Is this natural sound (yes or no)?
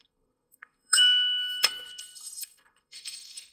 no